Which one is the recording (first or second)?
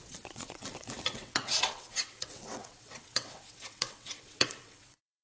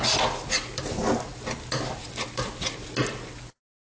second